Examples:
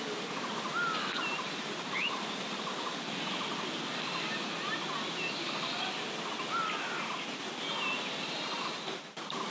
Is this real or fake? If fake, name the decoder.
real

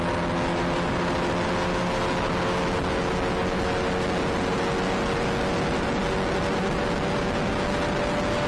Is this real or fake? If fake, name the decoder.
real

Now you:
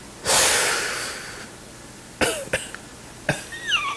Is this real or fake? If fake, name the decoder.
real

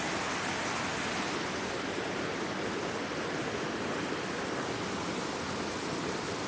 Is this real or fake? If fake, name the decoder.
real